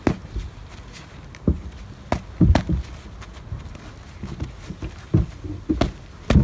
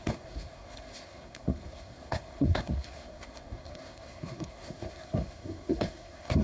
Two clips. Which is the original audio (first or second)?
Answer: first